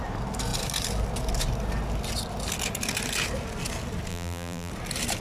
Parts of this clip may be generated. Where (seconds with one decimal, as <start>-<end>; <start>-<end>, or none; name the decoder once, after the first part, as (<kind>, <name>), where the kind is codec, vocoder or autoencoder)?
4.1-4.7 (vocoder, BigVGAN v2)